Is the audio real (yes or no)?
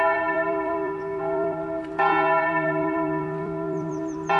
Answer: no